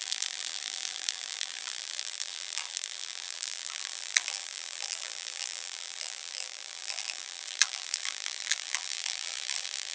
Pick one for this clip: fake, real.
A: fake